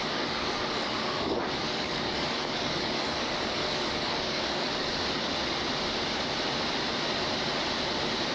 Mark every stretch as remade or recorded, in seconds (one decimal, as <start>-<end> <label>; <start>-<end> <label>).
0.0-5.3 remade; 5.3-8.3 recorded